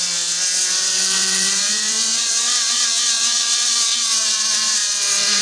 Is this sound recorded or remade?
remade